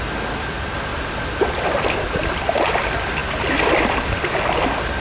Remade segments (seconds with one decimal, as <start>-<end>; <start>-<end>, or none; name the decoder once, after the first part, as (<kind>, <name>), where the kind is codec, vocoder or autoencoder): none